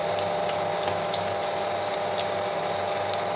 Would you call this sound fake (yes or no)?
no